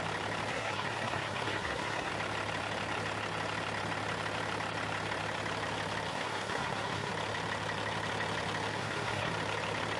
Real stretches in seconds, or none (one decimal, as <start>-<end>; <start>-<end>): 0.0-0.5; 2.1-6.1; 7.1-8.7; 9.3-10.0